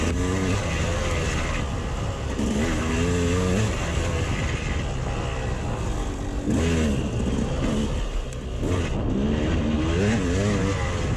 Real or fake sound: real